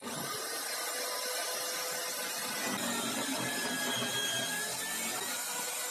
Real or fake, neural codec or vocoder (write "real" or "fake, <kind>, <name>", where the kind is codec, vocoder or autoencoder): real